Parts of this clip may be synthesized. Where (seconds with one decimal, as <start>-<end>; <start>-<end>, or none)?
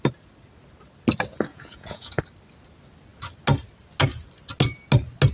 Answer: 1.5-2.2